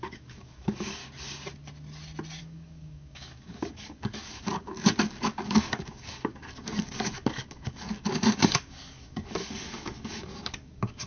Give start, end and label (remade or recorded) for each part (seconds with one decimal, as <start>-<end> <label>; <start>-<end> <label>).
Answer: 0.0-1.0 remade; 1.0-2.4 recorded; 2.4-11.1 remade